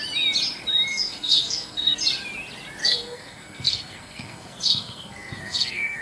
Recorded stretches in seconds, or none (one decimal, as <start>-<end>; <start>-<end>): 0.0-0.9; 2.0-2.8